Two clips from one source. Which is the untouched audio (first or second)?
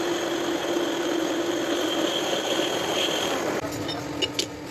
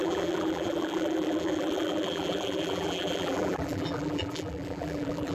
first